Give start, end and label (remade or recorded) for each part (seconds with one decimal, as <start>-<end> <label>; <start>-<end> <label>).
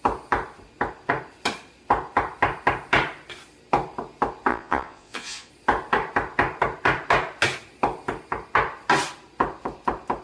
0.0-4.5 recorded; 4.5-5.5 remade; 5.5-10.2 recorded